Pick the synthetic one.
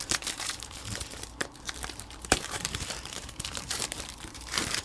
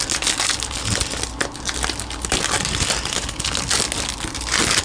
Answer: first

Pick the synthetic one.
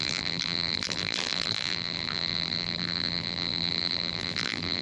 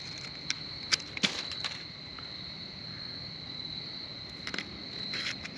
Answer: first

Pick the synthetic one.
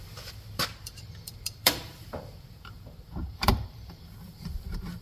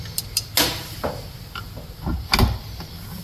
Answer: first